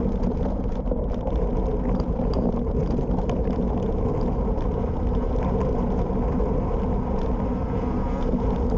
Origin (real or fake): real